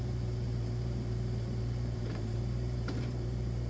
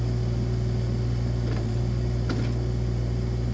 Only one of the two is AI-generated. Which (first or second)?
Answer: first